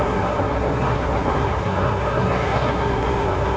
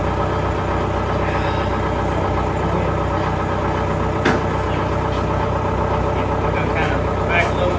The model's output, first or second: first